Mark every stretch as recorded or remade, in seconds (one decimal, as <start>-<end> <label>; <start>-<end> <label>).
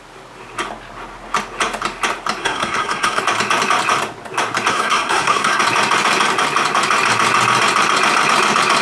0.0-2.4 recorded; 2.4-3.2 remade; 3.2-4.7 recorded; 4.7-5.6 remade; 5.6-8.8 recorded